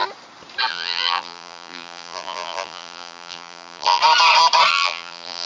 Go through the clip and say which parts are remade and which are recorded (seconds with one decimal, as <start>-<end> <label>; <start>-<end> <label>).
0.0-0.7 recorded; 0.7-4.0 remade; 4.0-4.7 recorded; 4.7-5.5 remade